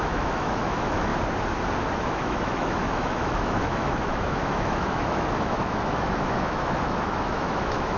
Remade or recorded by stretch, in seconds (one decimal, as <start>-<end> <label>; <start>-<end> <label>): 0.0-1.1 remade; 1.1-1.8 recorded; 1.8-8.0 remade